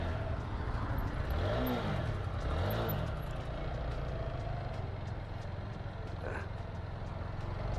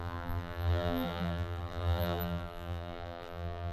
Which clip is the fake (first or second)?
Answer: second